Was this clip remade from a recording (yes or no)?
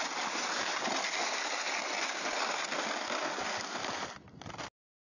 no